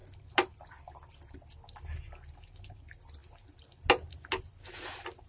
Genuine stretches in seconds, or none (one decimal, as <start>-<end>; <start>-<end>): 0.0-5.3